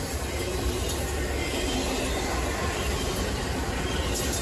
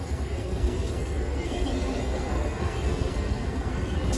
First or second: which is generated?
second